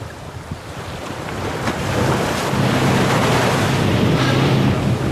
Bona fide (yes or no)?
yes